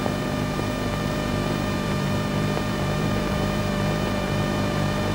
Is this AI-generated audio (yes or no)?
yes